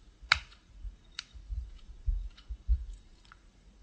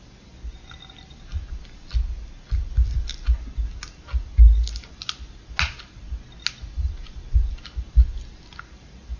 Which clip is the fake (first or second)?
first